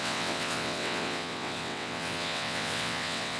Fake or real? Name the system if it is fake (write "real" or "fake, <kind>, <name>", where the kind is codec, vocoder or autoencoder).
fake, vocoder, WaveNeXt